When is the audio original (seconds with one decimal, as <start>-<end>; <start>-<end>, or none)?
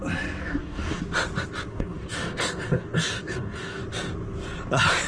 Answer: 0.0-0.4; 1.0-1.7; 3.8-5.1